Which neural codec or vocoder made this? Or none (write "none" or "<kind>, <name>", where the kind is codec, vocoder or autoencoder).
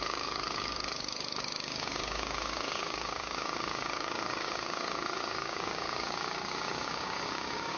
codec, DAC